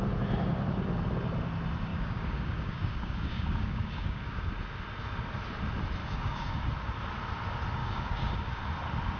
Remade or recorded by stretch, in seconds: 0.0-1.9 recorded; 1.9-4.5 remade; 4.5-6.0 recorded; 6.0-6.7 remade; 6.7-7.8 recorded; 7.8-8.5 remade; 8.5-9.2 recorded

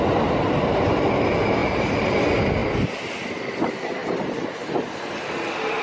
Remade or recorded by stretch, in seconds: 0.0-1.6 recorded; 1.6-2.2 remade; 2.2-4.0 recorded; 4.0-5.2 remade; 5.2-5.8 recorded

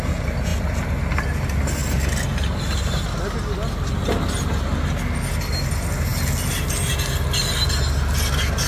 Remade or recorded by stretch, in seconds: 0.0-8.7 recorded

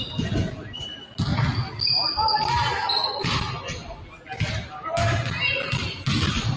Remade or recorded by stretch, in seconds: 0.0-6.6 recorded

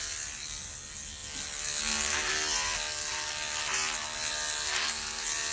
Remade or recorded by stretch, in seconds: 0.0-5.5 recorded

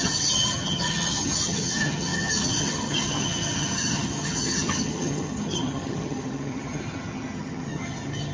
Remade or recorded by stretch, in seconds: 0.0-8.3 remade

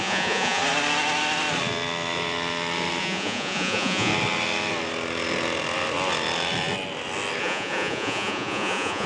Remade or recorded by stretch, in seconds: 0.0-0.6 remade; 0.6-3.0 recorded; 3.0-4.1 remade; 4.1-7.4 recorded; 7.4-9.1 remade

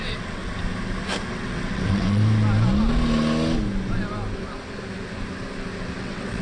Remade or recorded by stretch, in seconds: 0.0-0.4 remade; 0.4-1.3 recorded; 1.3-2.2 remade; 2.2-6.0 recorded; 6.0-6.4 remade